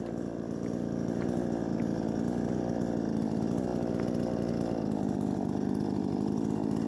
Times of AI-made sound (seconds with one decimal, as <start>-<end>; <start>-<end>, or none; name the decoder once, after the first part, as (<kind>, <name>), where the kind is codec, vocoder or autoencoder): 0.0-3.7 (vocoder, BigVGAN v2); 4.5-6.9